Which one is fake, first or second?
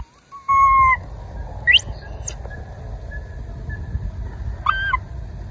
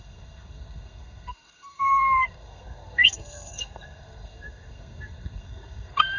second